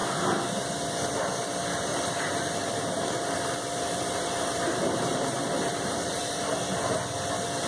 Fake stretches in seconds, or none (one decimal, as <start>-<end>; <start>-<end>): 1.9-6.5